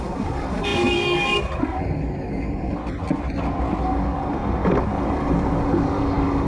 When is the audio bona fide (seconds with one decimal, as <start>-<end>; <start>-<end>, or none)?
2.8-3.8